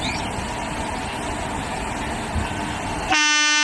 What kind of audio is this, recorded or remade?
recorded